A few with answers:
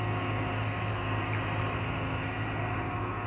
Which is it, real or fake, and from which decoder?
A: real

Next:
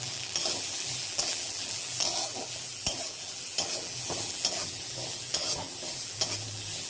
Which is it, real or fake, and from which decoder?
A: fake, vocoder, BigVGAN v2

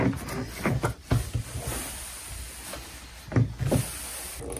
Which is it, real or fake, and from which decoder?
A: real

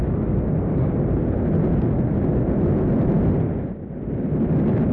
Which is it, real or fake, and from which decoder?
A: real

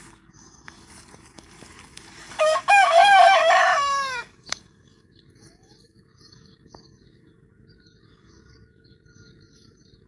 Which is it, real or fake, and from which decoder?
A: fake, codec, DAC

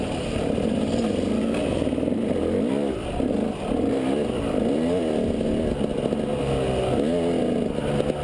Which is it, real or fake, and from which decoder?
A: real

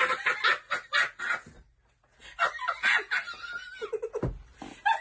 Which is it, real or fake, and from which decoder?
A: real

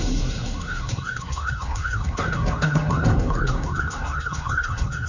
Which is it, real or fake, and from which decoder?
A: fake, codec, SNAC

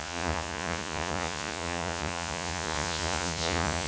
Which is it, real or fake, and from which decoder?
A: fake, vocoder, Vocos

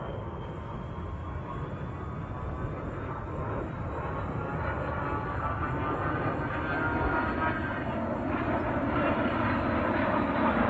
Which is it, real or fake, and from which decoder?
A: real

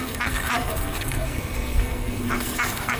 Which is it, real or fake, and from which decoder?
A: fake, codec, SNAC